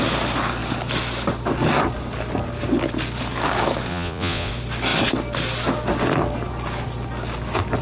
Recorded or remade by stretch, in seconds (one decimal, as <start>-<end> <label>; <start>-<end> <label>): 0.0-3.9 recorded; 3.9-4.5 remade; 4.5-7.8 recorded